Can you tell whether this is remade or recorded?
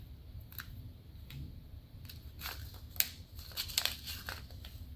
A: recorded